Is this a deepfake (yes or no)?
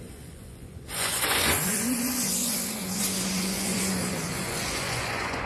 yes